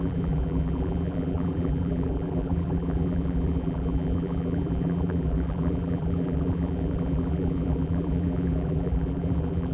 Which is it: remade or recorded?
remade